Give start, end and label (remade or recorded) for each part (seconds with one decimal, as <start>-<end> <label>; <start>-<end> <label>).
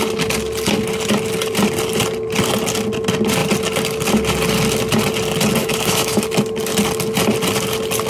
0.0-5.6 recorded; 5.6-6.2 remade; 6.2-8.1 recorded